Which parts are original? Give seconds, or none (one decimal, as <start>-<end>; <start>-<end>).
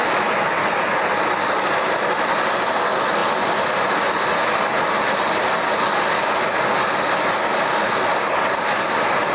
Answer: 0.0-9.3